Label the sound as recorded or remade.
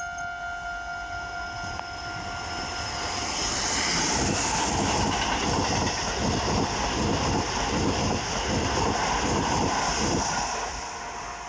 recorded